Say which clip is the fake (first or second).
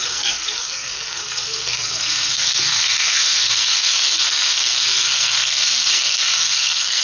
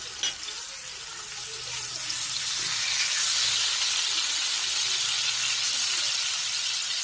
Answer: first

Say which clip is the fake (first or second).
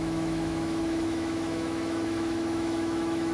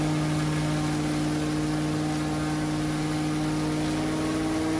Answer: first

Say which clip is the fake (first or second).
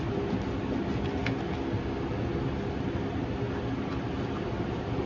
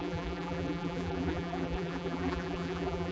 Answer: second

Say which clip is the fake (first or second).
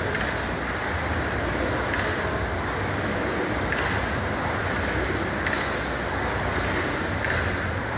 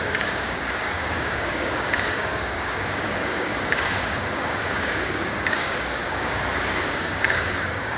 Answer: second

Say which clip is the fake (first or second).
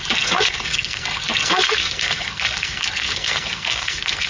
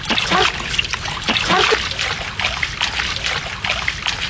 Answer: first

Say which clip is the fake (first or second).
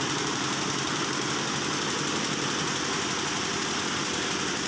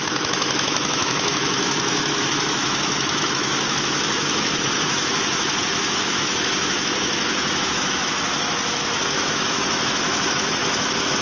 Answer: second